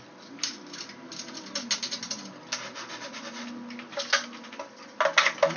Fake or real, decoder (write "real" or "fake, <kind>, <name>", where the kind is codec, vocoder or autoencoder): real